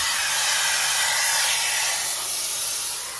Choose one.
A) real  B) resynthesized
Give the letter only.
A